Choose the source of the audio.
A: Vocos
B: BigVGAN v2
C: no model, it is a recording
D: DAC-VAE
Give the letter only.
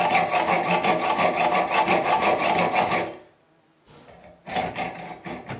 C